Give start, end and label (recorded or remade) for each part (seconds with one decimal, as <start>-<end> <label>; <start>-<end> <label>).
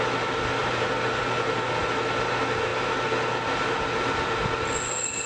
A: 0.0-5.3 recorded